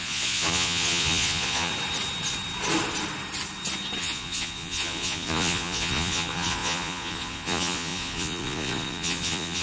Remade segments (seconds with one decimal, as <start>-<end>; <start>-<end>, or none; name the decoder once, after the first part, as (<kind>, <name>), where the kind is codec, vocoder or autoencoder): 0.0-1.7 (vocoder, Vocos); 4.0-9.6